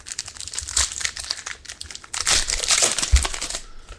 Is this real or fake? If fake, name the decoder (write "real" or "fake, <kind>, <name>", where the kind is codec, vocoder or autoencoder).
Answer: real